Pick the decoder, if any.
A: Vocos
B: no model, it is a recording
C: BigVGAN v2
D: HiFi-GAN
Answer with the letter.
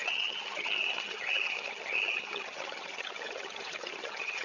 D